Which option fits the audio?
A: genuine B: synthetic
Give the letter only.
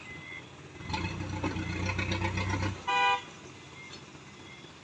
A